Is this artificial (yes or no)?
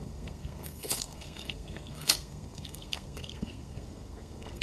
yes